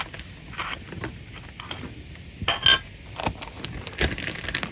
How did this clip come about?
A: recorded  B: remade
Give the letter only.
A